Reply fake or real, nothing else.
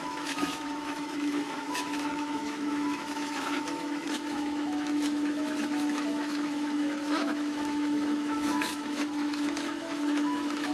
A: fake